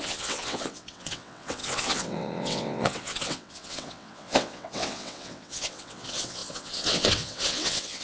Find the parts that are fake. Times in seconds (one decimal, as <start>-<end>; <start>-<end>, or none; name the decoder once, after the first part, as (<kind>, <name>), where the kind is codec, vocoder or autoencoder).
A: 0.0-8.0 (vocoder, WaveNeXt)